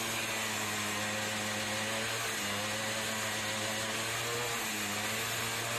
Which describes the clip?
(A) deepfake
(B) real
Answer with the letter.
B